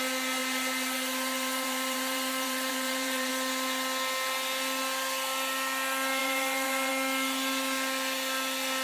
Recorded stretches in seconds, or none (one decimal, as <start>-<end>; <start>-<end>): 0.0-0.4; 3.3-6.2; 6.9-8.8